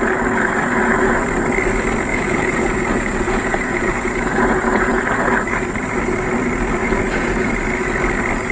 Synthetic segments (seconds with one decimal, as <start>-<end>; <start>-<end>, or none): 2.1-5.0; 6.8-7.5